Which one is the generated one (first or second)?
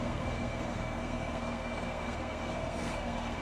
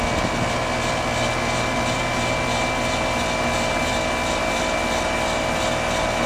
first